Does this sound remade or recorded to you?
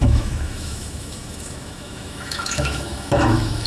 remade